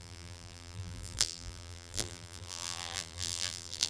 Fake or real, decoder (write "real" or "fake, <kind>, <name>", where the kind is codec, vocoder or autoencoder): fake, vocoder, BigVGAN v2